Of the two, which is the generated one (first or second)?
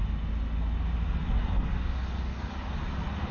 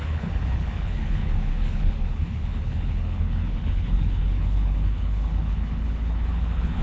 second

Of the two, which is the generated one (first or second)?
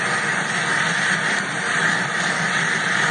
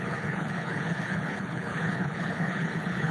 second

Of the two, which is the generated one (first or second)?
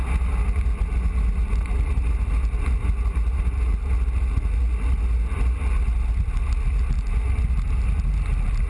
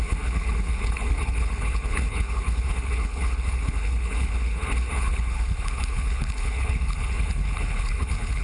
second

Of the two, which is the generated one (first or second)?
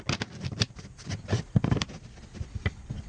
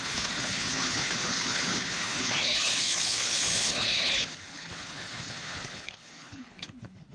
second